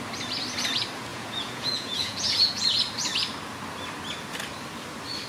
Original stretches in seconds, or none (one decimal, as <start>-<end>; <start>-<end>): 0.0-1.1; 2.6-5.3